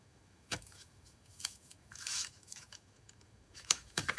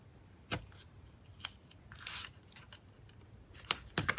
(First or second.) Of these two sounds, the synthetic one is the first